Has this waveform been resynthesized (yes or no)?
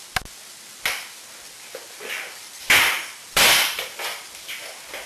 no